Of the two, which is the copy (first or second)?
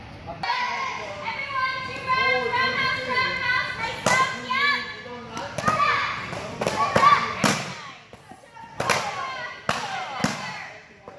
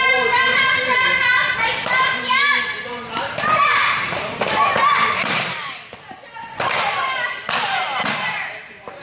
second